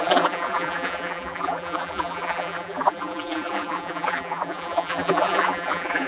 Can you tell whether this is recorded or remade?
remade